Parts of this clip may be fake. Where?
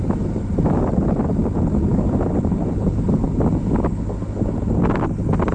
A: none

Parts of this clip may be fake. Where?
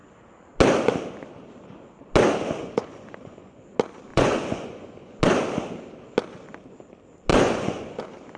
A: 2.6-3.6 (vocoder, Vocos); 4.1-5.2; 7.3-8.0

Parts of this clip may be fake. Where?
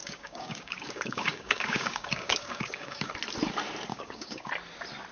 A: 0.0-3.1 (codec, DAC); 3.9-4.5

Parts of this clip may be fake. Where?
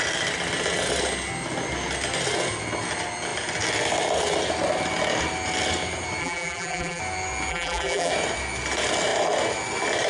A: 6.2-7.0 (vocoder, BigVGAN v2); 7.5-8.1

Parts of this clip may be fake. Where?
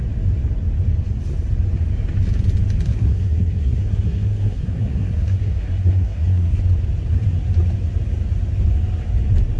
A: 2.9-6.6 (codec, SNAC)